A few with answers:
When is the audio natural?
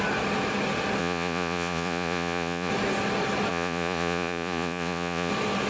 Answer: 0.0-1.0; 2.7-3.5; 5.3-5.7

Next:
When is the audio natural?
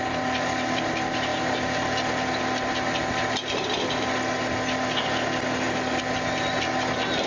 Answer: 0.0-7.3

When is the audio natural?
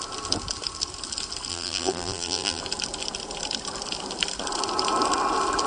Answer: 0.0-1.5; 2.6-5.7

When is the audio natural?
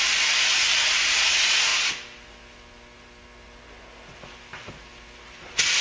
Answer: 0.0-5.8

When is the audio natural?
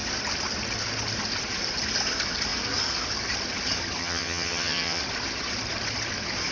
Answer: 0.0-4.0; 5.0-6.5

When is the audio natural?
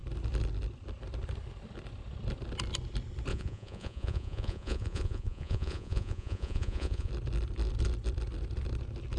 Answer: 0.0-3.3; 7.1-9.2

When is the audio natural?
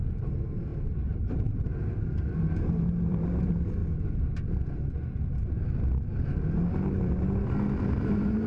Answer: 3.8-8.0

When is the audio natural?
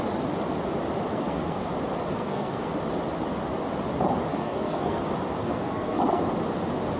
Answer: 0.0-1.1; 1.7-2.1; 2.7-4.3; 5.0-5.4; 6.2-7.0